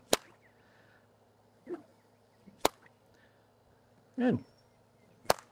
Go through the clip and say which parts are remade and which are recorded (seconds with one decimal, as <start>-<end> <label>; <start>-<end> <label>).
0.0-5.5 recorded